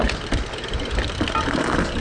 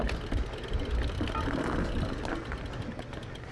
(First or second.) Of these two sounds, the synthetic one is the first